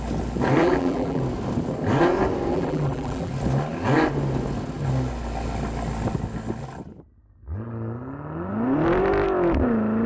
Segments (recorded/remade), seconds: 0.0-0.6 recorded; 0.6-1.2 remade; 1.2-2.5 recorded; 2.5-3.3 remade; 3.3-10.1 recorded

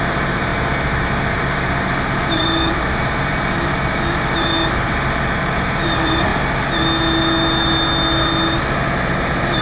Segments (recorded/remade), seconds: 0.0-6.3 remade; 6.3-8.6 recorded; 8.6-9.6 remade